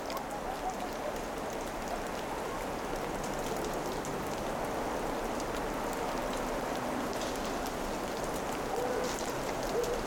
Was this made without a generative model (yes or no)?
yes